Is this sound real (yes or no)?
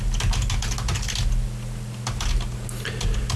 yes